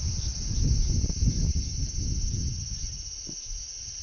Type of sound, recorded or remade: recorded